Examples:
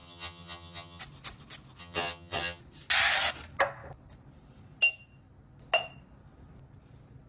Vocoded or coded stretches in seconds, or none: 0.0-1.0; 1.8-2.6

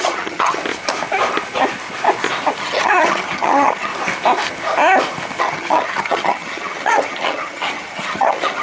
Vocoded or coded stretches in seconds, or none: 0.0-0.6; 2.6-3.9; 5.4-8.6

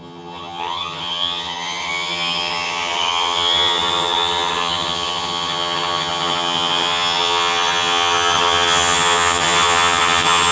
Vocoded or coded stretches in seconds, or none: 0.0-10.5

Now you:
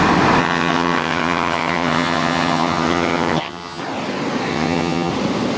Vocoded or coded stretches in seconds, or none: 0.4-3.8; 4.5-5.1

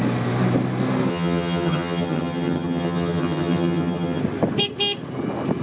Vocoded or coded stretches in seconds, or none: 1.1-4.2

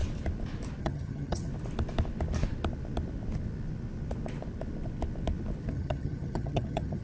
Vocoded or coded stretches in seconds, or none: 0.8-1.5; 5.7-7.0

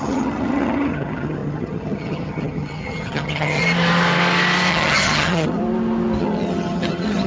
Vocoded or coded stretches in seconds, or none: 0.0-3.6; 4.7-5.6; 6.2-7.3

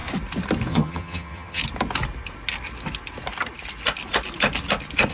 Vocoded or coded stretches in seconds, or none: 0.7-1.6